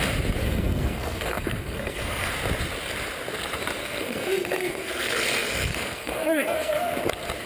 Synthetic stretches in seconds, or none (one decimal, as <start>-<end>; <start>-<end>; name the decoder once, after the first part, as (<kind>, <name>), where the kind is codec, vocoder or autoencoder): 0.4-2.3 (codec, SNAC); 3.8-7.0